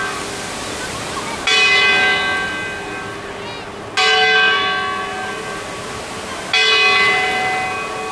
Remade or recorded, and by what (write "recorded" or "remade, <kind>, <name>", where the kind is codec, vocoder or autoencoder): recorded